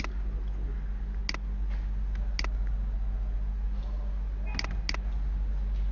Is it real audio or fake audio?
real